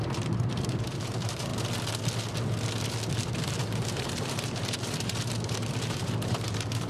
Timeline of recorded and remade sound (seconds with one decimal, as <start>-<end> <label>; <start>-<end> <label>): 0.0-1.5 remade; 1.5-3.3 recorded; 3.3-6.9 remade